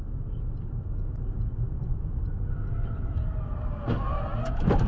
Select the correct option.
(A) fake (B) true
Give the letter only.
B